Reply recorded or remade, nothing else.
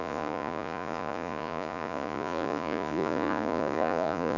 remade